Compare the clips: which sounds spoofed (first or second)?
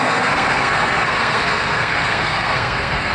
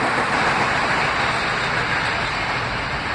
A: first